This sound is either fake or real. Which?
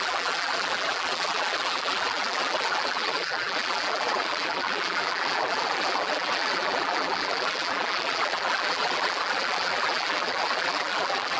fake